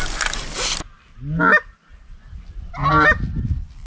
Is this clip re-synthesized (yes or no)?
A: no